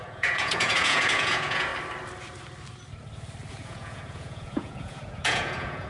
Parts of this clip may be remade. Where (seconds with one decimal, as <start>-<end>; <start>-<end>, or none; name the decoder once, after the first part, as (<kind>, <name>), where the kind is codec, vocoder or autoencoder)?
0.0-1.7 (vocoder, Vocos); 3.5-5.9